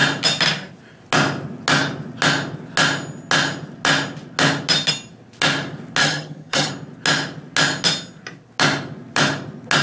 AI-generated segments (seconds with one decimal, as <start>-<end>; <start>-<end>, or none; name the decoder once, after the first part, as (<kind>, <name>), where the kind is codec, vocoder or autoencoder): 6.0-6.7 (vocoder, HiFi-GAN)